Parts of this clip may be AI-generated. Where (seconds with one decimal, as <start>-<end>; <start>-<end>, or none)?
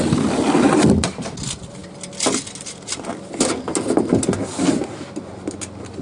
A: none